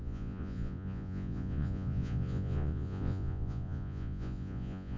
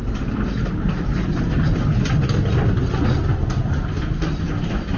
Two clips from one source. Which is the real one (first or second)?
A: second